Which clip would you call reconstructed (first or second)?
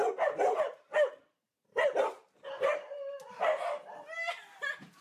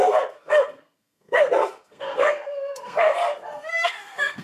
second